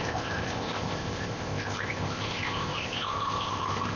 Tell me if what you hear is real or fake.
fake